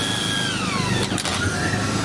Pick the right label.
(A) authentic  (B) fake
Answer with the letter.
A